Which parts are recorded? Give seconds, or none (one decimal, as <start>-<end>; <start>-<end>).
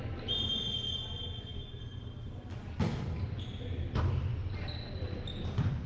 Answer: 0.0-5.9